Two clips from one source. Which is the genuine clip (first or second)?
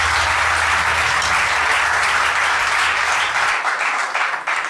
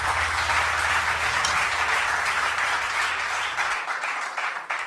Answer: first